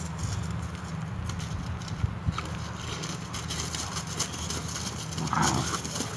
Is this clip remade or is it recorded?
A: recorded